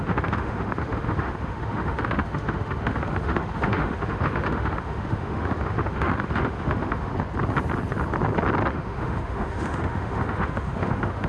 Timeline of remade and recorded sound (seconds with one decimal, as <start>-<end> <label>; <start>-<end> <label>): 0.0-7.1 remade; 7.1-8.7 recorded; 8.7-11.3 remade